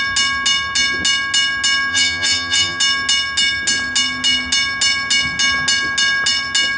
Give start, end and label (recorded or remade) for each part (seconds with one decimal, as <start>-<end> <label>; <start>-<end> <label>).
0.0-1.9 recorded; 1.9-2.8 remade; 2.8-6.8 recorded